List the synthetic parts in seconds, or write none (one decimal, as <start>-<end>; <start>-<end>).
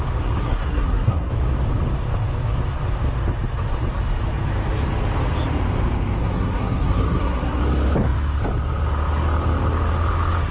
0.4-1.3; 6.2-7.6